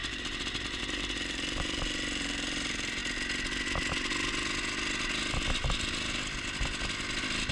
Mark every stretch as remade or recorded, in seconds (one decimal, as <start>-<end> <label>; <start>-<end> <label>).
0.0-3.0 remade; 3.0-7.5 recorded